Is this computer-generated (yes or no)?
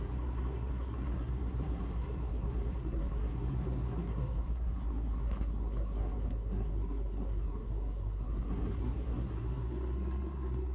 yes